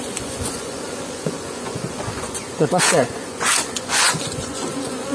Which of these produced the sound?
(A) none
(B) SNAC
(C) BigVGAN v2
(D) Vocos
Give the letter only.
D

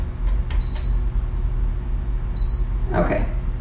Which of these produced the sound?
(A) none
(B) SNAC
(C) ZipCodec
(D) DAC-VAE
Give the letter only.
A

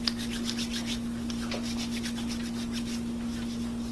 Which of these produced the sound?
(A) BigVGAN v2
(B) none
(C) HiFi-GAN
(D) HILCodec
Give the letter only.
B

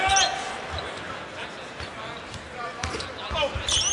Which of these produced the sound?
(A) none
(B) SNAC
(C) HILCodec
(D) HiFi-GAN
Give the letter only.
A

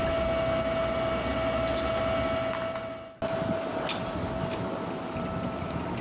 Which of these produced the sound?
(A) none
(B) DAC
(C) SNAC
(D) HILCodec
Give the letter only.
A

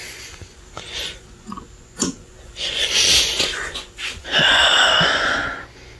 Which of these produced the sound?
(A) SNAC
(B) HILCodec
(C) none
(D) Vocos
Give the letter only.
D